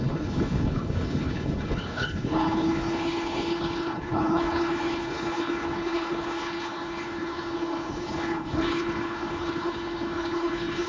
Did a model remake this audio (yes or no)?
yes